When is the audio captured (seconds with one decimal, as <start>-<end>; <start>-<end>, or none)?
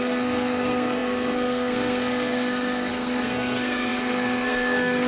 none